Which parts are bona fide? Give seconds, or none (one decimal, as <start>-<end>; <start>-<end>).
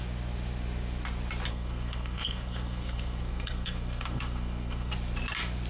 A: 0.0-1.5; 4.9-5.7